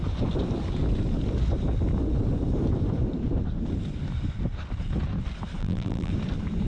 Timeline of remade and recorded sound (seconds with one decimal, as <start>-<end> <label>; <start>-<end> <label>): 0.0-5.6 recorded; 5.6-6.1 remade; 6.1-6.7 recorded